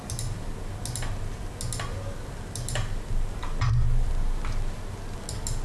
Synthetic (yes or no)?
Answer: no